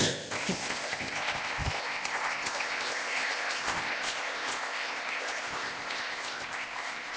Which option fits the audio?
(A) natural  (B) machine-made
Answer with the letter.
B